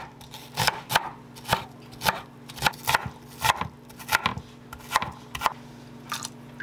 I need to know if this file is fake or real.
real